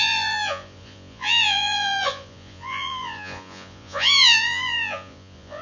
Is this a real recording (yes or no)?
no